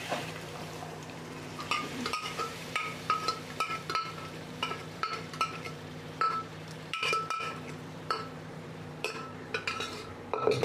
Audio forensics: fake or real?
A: fake